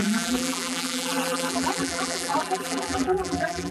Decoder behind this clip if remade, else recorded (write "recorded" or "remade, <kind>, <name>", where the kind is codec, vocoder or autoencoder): remade, vocoder, BigVGAN v2